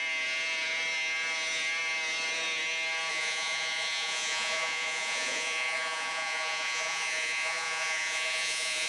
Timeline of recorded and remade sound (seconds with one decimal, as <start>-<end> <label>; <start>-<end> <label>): 0.0-3.1 recorded; 3.1-8.9 remade